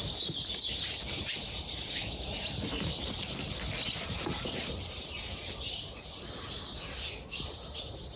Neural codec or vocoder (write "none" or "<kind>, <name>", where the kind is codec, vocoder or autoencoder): none